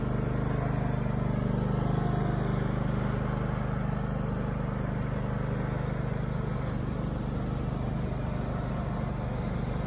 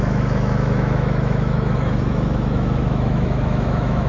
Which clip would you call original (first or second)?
first